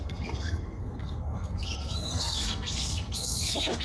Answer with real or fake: fake